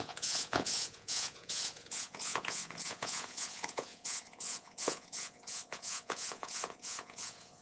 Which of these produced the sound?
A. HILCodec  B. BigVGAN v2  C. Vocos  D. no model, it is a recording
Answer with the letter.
C